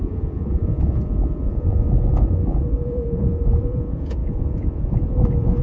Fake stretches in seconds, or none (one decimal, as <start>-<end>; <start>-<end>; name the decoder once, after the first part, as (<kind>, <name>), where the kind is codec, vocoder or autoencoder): 0.0-5.6 (vocoder, Vocos)